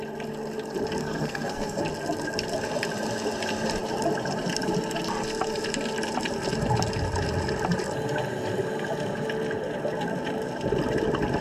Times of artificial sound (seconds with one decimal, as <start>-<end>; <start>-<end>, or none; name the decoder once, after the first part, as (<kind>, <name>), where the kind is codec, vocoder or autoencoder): 1.0-1.8 (codec, SNAC)

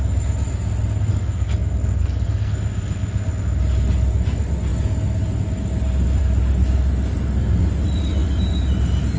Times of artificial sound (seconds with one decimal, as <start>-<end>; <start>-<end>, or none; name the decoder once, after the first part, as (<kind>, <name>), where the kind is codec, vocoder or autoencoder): 1.1-2.5 (codec, SNAC)

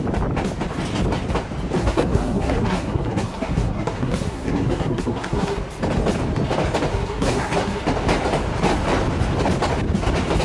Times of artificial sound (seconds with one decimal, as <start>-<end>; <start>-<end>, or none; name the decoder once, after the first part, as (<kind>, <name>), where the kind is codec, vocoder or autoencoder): 1.8-5.6 (codec, SNAC); 6.9-7.8

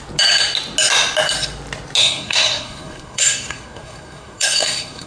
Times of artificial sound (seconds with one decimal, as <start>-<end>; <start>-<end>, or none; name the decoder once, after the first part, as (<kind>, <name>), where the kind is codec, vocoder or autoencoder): 2.0-5.1 (codec, SNAC)

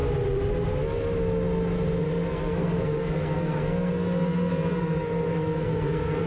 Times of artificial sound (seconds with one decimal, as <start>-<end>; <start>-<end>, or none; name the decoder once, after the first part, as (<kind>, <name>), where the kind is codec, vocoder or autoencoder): 2.3-6.3 (codec, SNAC)

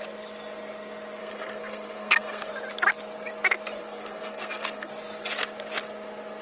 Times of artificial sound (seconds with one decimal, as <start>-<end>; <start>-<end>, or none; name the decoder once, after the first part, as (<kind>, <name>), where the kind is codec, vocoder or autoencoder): 1.2-2.5 (codec, SNAC); 3.8-4.9